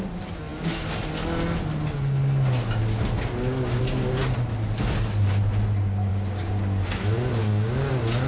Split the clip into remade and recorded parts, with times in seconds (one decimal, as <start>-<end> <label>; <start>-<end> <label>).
0.0-6.1 recorded; 6.1-6.9 remade; 6.9-7.4 recorded; 7.4-7.9 remade; 7.9-8.3 recorded